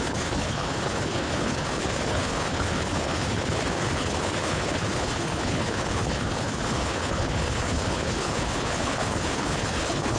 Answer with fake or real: fake